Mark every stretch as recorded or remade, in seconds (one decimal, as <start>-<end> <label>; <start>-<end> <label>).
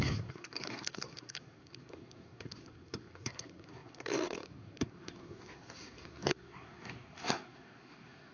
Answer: 0.0-8.3 remade